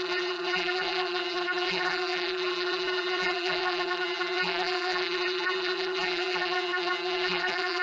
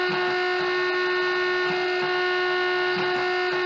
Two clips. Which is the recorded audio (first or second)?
second